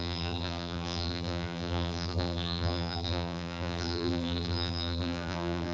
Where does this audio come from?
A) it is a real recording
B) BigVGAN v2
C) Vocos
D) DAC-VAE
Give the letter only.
B